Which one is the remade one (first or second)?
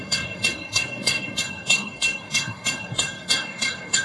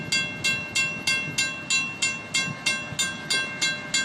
first